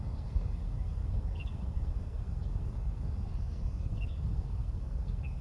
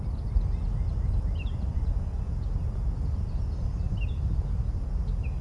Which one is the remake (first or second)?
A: first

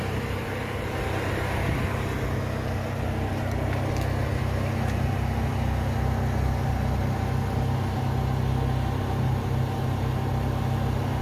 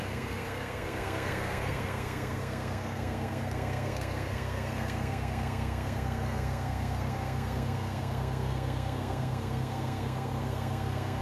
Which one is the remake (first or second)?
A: second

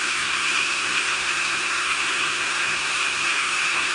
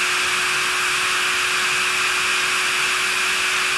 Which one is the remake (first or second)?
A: first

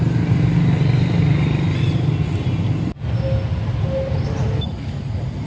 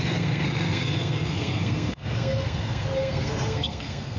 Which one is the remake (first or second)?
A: second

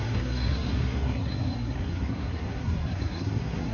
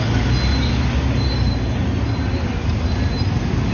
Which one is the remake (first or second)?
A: first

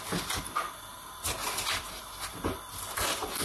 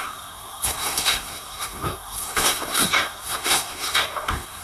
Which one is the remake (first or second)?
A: second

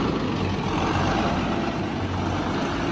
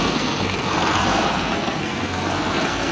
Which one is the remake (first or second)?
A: second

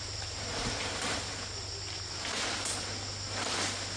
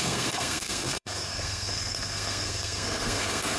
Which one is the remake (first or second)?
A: second